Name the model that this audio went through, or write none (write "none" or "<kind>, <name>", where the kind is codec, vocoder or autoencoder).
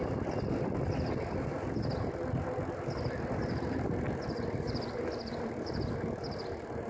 none